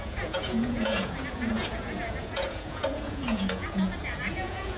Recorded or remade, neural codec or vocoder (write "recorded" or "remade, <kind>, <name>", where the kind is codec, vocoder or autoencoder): remade, vocoder, Vocos